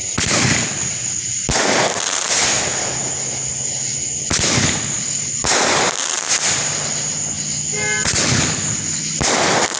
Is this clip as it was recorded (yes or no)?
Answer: yes